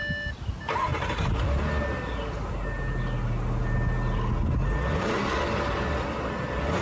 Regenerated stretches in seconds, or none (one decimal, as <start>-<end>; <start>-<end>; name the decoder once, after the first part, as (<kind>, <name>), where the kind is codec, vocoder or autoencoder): none